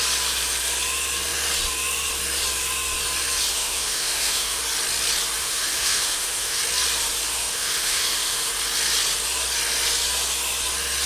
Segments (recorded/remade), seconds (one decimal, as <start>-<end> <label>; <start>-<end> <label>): 0.0-3.5 recorded; 3.5-4.6 remade; 4.6-5.4 recorded; 5.4-6.6 remade; 6.6-7.4 recorded; 7.4-8.5 remade; 8.5-11.1 recorded